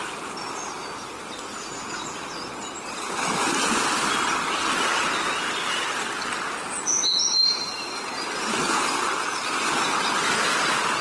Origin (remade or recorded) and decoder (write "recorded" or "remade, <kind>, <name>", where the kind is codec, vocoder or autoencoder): recorded